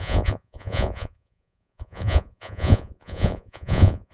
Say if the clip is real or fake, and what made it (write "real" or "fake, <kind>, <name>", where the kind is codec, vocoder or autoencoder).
fake, vocoder, Vocos